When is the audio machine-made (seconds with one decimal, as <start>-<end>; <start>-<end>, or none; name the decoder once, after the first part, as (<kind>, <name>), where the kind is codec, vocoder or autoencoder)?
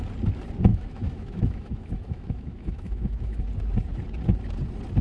0.7-3.4 (autoencoder, DAC-VAE)